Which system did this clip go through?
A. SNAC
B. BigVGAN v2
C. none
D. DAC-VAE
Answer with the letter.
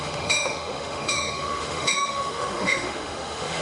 D